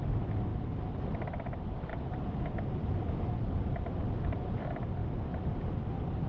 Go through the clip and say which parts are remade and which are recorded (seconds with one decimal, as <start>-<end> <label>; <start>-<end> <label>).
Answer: 0.0-0.5 remade; 0.5-1.0 recorded; 1.0-5.0 remade; 5.0-6.3 recorded